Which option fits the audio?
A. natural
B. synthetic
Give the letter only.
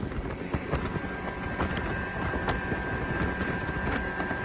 A